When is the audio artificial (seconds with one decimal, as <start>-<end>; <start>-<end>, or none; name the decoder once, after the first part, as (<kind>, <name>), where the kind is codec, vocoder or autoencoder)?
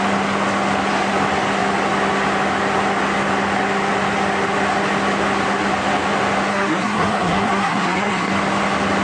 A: 6.5-8.3 (codec, SNAC)